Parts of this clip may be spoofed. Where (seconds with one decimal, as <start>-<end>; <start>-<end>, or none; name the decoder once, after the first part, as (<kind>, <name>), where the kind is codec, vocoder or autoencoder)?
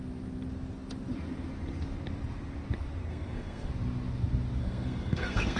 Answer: 3.1-3.7 (codec, SNAC); 4.6-5.6